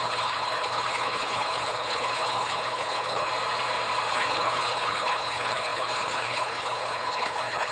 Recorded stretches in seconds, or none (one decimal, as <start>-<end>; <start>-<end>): 3.3-4.1